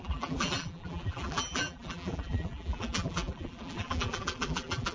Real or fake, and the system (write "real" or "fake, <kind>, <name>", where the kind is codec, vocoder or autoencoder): fake, vocoder, BigVGAN v2